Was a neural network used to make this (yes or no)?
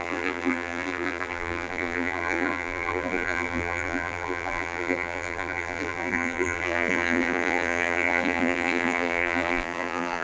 yes